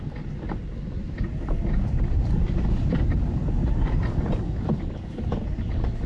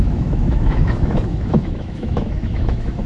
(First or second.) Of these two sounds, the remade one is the second